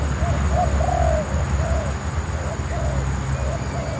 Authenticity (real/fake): real